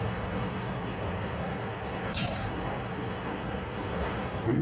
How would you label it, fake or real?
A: fake